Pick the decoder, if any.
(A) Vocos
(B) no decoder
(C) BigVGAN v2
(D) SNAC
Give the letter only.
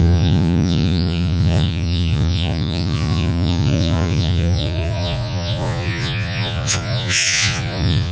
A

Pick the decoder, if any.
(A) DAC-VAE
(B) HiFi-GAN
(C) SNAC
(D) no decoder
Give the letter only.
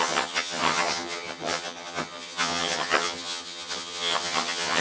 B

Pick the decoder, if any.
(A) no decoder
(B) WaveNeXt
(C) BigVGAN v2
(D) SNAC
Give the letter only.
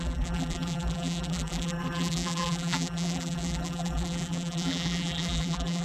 C